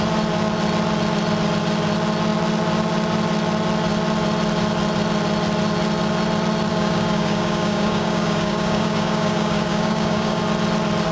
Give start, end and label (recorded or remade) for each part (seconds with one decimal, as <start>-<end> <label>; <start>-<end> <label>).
0.0-6.7 recorded; 6.7-10.4 remade; 10.4-11.1 recorded